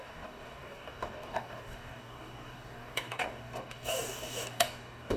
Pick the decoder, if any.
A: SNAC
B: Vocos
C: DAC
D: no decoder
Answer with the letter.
C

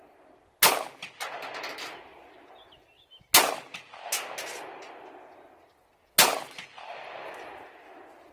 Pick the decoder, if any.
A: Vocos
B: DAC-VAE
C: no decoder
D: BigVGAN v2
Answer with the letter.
C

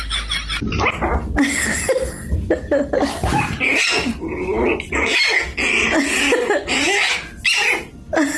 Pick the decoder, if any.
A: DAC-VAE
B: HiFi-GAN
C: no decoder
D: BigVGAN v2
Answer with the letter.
C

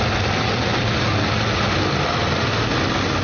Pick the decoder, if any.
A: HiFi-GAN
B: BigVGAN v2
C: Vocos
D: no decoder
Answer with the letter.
D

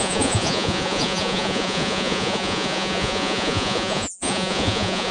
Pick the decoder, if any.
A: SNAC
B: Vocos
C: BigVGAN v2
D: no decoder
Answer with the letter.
B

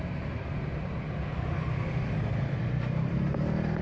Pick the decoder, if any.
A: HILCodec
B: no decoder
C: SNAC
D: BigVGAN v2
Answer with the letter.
D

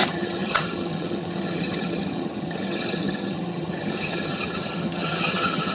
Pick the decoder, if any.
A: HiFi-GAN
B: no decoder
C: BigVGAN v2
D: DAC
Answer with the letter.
A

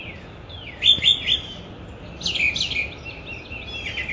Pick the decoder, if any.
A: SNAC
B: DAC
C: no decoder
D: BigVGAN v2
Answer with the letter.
C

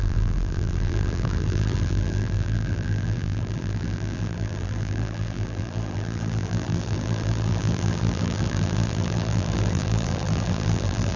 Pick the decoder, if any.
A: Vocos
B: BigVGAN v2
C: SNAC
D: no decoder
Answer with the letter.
B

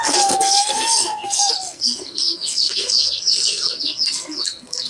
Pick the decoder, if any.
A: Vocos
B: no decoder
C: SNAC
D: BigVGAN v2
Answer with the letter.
C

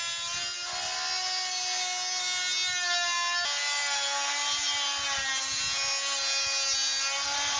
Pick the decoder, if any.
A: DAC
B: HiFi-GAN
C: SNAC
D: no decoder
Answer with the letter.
D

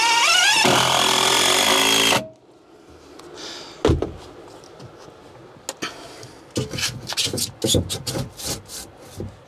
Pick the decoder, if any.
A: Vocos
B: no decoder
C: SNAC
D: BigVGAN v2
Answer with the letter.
B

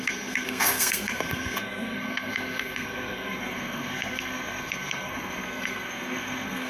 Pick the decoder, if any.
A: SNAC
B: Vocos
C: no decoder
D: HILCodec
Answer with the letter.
A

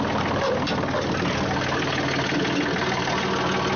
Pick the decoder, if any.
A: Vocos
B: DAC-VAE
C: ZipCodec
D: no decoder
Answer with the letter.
D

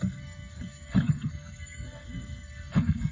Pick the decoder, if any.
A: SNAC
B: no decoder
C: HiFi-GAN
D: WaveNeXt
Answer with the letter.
A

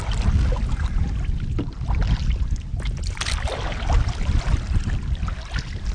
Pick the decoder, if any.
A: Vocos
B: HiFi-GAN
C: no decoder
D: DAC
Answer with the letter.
C